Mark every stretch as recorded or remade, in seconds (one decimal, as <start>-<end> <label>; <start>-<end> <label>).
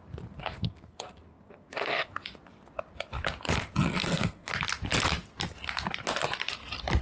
0.0-0.4 recorded; 0.4-2.1 remade; 2.1-4.0 recorded; 4.0-4.5 remade; 4.5-7.0 recorded